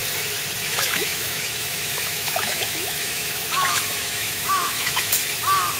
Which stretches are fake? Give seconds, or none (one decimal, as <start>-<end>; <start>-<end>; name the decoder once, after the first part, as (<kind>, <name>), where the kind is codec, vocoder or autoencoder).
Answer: 0.6-5.2 (autoencoder, DAC-VAE)